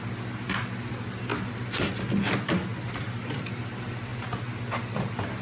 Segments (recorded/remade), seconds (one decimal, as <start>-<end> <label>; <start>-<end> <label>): 0.0-5.4 recorded